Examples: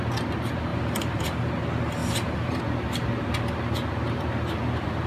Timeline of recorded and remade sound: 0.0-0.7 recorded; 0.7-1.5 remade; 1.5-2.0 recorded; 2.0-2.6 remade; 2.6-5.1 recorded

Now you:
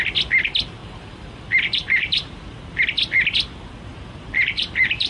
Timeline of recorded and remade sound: 0.0-0.8 recorded; 0.8-2.8 remade; 2.8-3.9 recorded; 3.9-5.1 remade

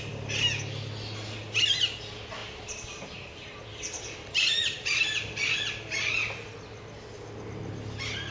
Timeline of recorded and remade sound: 0.0-2.4 recorded; 2.4-3.4 remade; 3.4-8.3 recorded

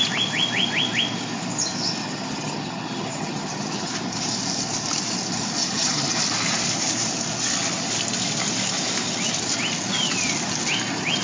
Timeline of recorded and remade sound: 0.0-2.0 recorded; 2.0-3.9 remade; 3.9-5.6 recorded; 5.6-6.2 remade; 6.2-11.2 recorded

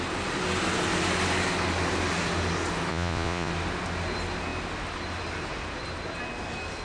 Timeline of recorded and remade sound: 0.0-2.9 recorded; 2.9-3.5 remade; 3.5-6.8 recorded

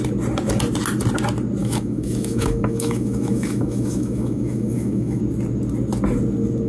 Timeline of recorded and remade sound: 0.0-1.6 recorded; 1.6-5.2 remade; 5.2-6.7 recorded